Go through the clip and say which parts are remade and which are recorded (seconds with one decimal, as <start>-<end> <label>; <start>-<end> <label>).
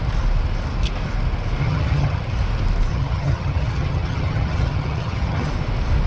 0.0-1.6 recorded; 1.6-2.2 remade; 2.2-2.9 recorded; 2.9-5.5 remade; 5.5-6.1 recorded